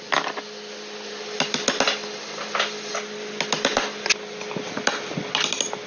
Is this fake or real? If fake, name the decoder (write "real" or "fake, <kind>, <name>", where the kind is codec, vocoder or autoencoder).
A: real